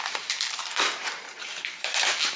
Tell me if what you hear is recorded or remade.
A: remade